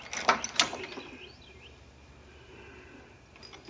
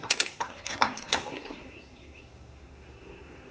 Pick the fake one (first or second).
second